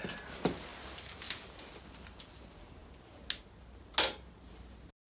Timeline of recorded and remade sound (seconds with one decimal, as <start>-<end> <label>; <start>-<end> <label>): 0.0-5.1 recorded